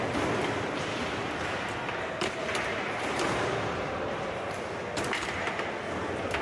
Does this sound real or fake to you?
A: real